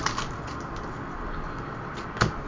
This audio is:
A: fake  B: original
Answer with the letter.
B